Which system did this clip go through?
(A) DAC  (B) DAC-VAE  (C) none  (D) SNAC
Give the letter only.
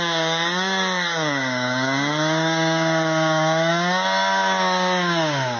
A